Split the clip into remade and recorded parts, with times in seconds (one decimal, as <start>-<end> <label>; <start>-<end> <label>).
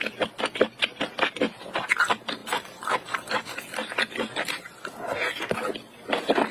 0.0-6.5 recorded